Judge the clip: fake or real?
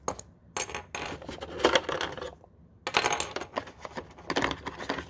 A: real